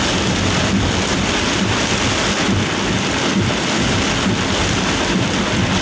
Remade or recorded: recorded